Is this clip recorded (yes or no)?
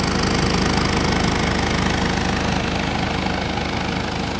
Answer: yes